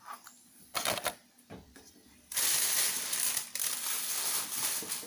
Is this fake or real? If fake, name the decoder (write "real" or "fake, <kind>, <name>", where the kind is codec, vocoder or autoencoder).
real